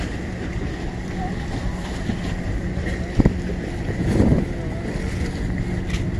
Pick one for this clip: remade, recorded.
recorded